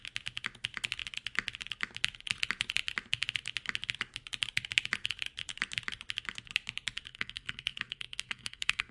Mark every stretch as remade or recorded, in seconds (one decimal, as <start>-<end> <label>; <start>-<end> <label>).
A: 0.0-7.1 recorded; 7.1-8.9 remade